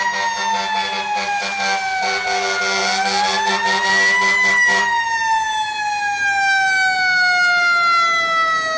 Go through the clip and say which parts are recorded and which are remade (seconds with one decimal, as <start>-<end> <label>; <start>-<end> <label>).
0.0-8.8 recorded